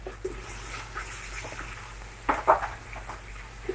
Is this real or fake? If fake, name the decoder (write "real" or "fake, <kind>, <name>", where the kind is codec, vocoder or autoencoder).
real